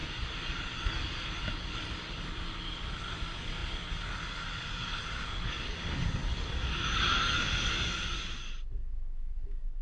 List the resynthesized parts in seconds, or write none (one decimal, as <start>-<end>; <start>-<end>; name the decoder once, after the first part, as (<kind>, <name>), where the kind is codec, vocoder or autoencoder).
0.0-9.8 (codec, DAC)